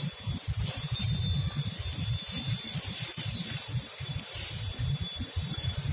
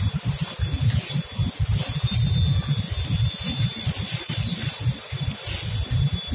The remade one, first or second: first